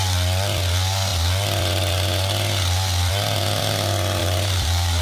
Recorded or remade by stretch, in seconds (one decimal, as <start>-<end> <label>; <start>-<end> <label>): 0.0-4.2 recorded; 4.2-5.0 remade